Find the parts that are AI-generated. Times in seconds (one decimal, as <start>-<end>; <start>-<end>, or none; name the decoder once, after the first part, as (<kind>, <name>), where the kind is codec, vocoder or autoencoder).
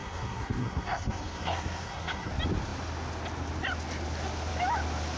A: 0.0-2.3 (codec, SNAC)